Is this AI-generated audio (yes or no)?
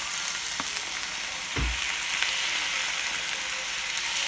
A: no